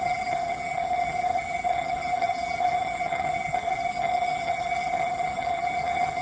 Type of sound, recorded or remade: remade